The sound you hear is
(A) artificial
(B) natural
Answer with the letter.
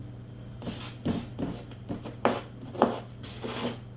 B